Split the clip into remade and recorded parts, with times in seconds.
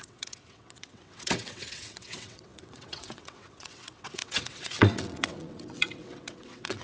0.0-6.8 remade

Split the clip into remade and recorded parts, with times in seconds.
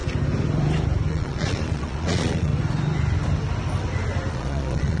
0.0-1.1 recorded; 1.1-2.5 remade; 2.5-4.3 recorded; 4.3-5.0 remade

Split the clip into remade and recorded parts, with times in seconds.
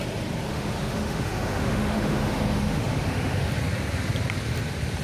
0.0-0.5 recorded; 0.5-3.5 remade; 3.5-5.0 recorded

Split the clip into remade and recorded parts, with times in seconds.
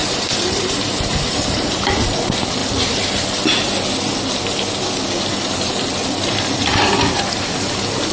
0.0-2.6 remade; 2.6-7.0 recorded; 7.0-8.1 remade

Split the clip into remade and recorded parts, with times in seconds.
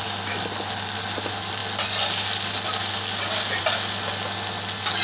0.0-5.0 recorded